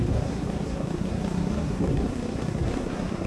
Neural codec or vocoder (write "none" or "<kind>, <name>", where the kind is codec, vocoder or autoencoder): codec, SNAC